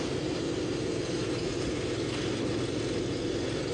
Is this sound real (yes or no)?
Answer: yes